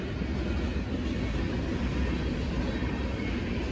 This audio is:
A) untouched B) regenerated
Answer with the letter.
A